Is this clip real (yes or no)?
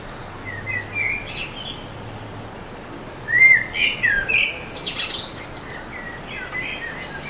yes